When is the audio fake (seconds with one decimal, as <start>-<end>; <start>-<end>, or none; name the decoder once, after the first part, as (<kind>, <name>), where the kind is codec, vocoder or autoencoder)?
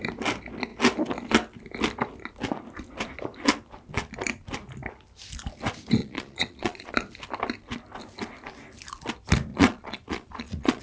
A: 6.0-6.9 (vocoder, Vocos); 9.5-10.8